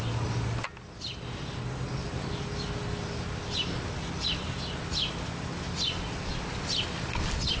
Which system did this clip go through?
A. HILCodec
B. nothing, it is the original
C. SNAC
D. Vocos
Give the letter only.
B